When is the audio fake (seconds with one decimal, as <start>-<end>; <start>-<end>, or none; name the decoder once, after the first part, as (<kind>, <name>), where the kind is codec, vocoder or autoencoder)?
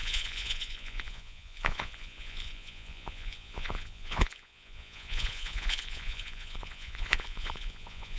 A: 0.0-8.2 (vocoder, Vocos)